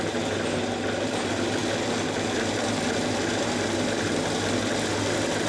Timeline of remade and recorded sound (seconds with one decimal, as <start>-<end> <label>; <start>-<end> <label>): 0.0-5.5 recorded